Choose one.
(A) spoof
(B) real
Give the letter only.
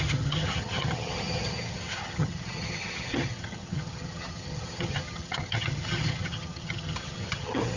A